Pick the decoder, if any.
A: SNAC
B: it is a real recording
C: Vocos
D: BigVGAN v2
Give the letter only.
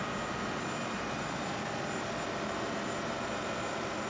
B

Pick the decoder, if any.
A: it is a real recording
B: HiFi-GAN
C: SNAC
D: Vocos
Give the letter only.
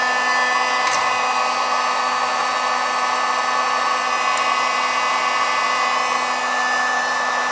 A